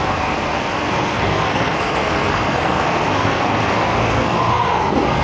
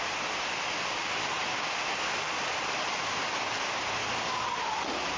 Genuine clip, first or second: second